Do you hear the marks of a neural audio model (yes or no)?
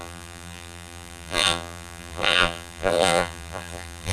yes